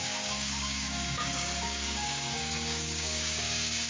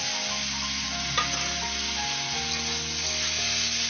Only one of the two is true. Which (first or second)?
second